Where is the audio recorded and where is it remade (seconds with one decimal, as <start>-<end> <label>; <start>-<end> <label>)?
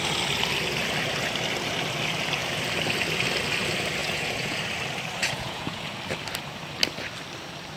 0.0-4.0 recorded; 4.0-4.6 remade; 4.6-5.2 recorded; 5.2-5.9 remade; 5.9-7.8 recorded